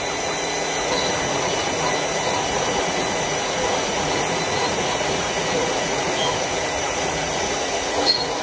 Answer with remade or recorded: remade